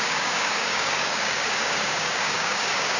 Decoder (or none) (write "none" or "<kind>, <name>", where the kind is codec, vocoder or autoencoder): codec, DAC